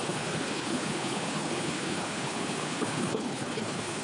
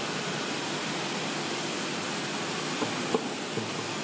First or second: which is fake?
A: first